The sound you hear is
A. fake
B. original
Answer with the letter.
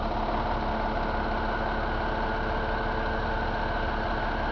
B